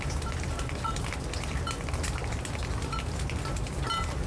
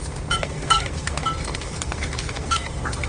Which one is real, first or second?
first